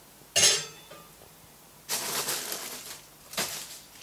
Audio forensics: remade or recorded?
recorded